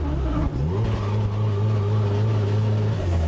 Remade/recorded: recorded